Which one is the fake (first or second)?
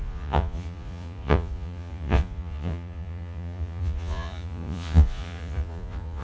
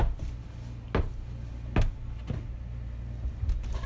first